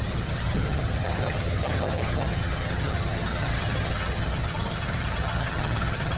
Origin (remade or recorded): remade